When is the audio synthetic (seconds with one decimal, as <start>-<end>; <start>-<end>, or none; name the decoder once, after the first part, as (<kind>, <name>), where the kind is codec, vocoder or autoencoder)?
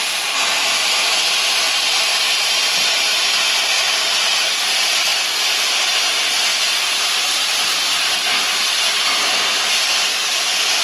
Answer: none